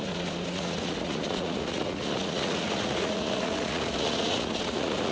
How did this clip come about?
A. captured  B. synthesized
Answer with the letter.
B